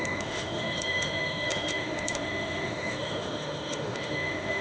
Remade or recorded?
remade